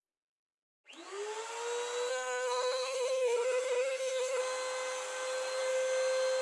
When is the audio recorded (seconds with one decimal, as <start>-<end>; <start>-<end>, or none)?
0.0-2.1; 4.4-6.4